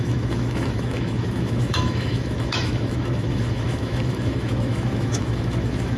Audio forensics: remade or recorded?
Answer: remade